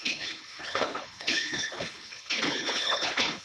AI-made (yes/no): yes